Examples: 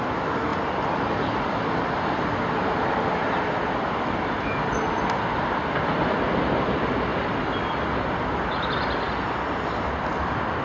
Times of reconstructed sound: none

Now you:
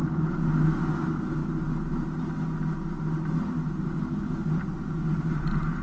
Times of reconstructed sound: none

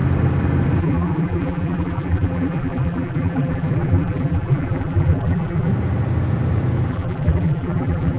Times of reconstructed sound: 0.8-5.7 (vocoder, BigVGAN v2); 6.9-8.2

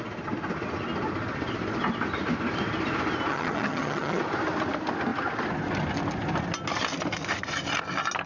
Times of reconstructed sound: 3.3-4.2 (vocoder, HiFi-GAN)